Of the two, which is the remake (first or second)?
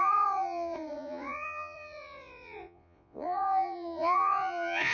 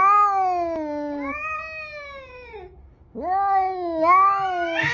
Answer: first